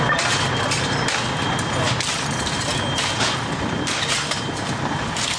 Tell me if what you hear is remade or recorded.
recorded